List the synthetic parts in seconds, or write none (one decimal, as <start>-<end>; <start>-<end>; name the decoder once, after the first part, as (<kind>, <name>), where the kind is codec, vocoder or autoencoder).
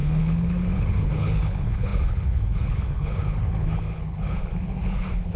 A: 0.0-5.4 (codec, HILCodec)